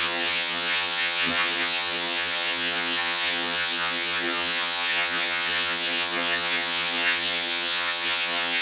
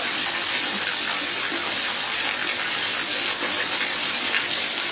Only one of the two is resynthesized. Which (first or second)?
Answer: first